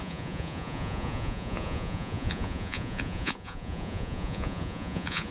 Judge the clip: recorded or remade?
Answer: remade